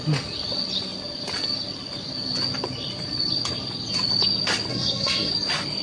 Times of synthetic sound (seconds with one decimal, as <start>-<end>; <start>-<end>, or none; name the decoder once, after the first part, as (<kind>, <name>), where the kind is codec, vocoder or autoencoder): 4.7-5.3 (codec, SNAC)